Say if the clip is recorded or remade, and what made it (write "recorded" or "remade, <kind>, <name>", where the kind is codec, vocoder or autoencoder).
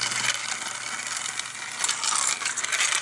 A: recorded